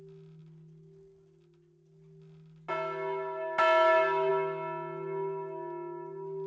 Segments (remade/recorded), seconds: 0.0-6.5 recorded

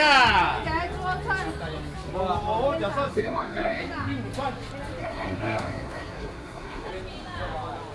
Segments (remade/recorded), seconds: 0.0-3.1 recorded; 3.1-3.8 remade; 3.8-5.0 recorded; 5.0-6.9 remade; 6.9-7.9 recorded

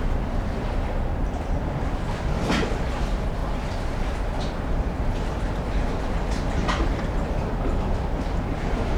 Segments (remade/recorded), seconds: 0.0-9.0 recorded

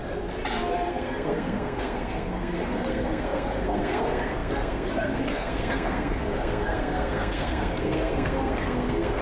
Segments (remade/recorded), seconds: 0.0-0.9 recorded; 0.9-9.2 remade

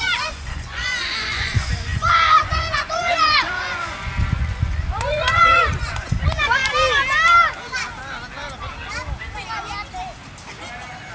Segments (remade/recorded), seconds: 0.0-6.6 remade; 6.6-11.1 recorded

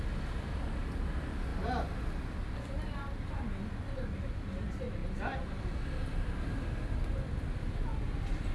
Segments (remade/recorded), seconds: 0.0-8.5 recorded

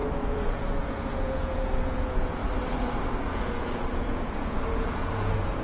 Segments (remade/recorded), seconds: 0.0-2.4 remade; 2.4-3.1 recorded; 3.1-5.6 remade